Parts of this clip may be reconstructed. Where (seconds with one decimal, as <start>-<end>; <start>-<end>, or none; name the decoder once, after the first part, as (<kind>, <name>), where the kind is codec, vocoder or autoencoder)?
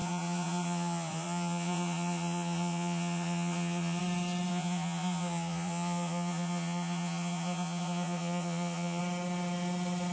0.0-4.0 (vocoder, Vocos); 4.5-9.0